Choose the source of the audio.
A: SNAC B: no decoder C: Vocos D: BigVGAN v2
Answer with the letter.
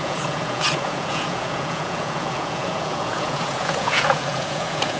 C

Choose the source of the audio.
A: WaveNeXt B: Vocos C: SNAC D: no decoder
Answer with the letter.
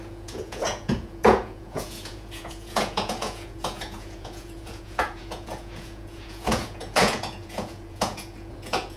B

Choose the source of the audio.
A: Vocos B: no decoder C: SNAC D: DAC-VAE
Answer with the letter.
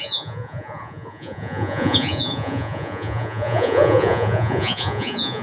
A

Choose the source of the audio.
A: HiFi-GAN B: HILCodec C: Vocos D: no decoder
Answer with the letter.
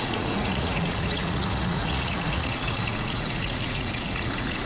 C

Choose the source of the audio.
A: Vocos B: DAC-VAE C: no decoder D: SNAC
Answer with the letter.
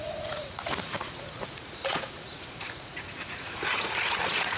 A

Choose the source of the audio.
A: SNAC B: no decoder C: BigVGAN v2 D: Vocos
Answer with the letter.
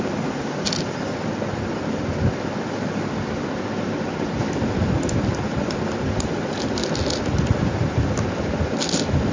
B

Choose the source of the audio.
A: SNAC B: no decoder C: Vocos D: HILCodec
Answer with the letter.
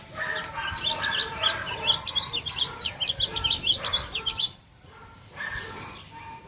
B